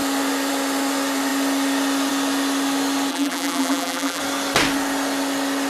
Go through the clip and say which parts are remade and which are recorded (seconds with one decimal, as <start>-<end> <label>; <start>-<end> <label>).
0.0-3.1 recorded; 3.1-4.2 remade; 4.2-5.7 recorded